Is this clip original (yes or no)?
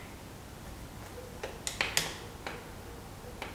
yes